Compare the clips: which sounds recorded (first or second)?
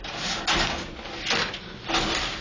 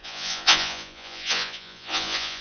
first